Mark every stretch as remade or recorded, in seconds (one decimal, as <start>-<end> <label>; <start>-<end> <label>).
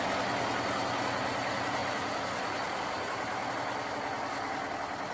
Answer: 0.0-1.8 recorded; 1.8-3.5 remade; 3.5-5.1 recorded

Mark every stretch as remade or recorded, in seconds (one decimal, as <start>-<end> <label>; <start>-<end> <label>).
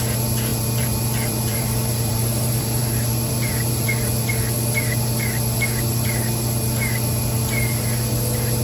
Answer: 0.0-0.5 recorded; 0.5-4.1 remade; 4.1-8.6 recorded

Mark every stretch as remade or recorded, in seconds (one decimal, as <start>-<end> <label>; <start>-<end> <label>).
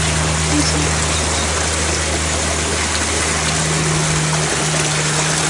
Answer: 0.0-5.5 recorded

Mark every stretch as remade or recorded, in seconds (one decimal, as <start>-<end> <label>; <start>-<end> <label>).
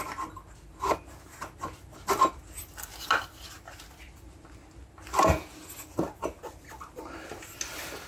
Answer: 0.0-2.9 recorded; 2.9-3.5 remade; 3.5-8.1 recorded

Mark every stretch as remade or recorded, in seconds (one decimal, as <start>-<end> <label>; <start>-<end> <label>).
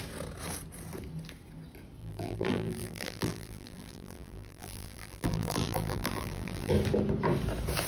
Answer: 0.0-2.0 recorded; 2.0-6.7 remade; 6.7-7.9 recorded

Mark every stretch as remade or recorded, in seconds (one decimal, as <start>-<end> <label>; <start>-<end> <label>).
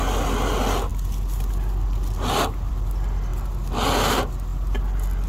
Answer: 0.0-5.3 recorded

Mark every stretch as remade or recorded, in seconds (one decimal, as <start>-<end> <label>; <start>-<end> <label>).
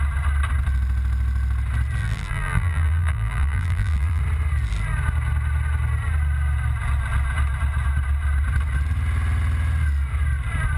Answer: 0.0-2.0 recorded; 2.0-4.2 remade; 4.2-10.8 recorded